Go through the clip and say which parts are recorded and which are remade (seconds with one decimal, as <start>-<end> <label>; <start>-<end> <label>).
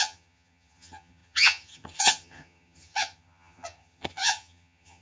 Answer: 0.0-5.0 remade